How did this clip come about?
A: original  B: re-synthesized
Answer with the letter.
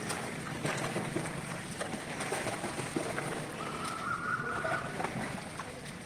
B